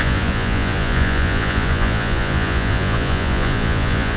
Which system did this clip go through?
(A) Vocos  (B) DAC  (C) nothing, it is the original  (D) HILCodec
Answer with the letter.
A